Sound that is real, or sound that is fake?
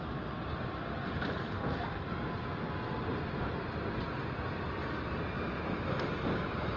real